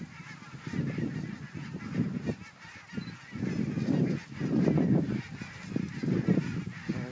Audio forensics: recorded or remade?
recorded